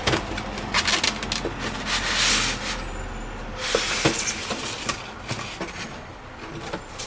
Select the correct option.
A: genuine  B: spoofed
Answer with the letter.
A